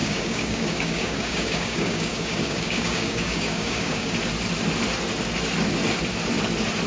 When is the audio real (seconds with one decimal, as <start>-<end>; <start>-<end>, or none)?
4.1-6.9